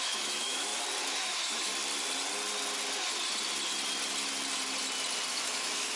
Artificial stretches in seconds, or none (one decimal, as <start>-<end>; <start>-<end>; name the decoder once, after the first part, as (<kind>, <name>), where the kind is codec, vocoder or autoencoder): 0.0-0.7 (autoencoder, DAC-VAE); 1.2-1.7; 5.3-6.0

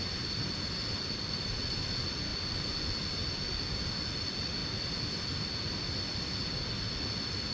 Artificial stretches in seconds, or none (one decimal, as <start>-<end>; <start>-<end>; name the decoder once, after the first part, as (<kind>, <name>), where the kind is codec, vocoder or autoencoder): none

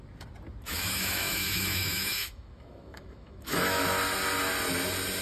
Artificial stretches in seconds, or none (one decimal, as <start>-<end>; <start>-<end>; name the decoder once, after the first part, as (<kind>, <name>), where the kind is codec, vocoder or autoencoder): 0.7-3.8 (autoencoder, DAC-VAE)

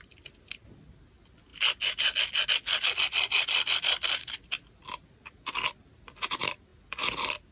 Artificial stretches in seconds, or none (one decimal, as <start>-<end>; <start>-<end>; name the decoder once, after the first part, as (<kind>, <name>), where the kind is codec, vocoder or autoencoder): none